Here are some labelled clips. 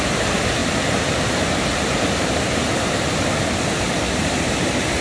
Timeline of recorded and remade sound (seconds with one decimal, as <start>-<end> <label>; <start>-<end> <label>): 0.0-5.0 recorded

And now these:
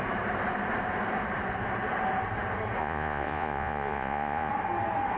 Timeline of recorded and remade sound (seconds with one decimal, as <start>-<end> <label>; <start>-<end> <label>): 0.0-2.8 recorded; 2.8-4.5 remade; 4.5-5.2 recorded

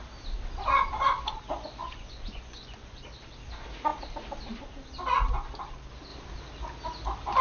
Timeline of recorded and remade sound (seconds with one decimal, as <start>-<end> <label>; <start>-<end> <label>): 0.0-1.8 recorded; 1.8-3.0 remade; 3.0-7.4 recorded

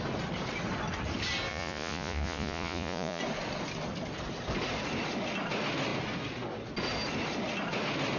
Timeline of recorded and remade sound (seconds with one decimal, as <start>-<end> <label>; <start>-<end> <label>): 0.0-1.5 recorded; 1.5-3.2 remade; 3.2-8.2 recorded

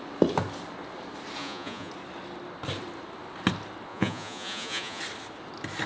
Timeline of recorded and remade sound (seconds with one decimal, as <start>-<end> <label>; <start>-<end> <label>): 0.0-1.4 recorded; 1.4-1.9 remade; 1.9-3.9 recorded; 3.9-5.0 remade; 5.0-5.9 recorded

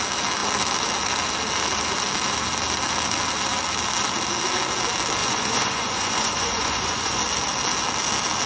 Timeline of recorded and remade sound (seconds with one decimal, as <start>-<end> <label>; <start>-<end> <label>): 0.0-5.2 recorded; 5.2-7.2 remade; 7.2-8.5 recorded

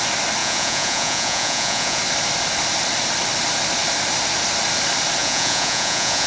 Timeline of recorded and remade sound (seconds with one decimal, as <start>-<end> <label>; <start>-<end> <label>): 0.0-0.4 recorded; 0.4-2.0 remade; 2.0-5.2 recorded; 5.2-6.3 remade

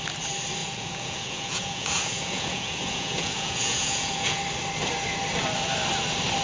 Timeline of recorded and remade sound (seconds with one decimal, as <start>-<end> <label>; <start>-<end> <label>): 0.0-0.6 recorded; 0.6-4.4 remade; 4.4-6.4 recorded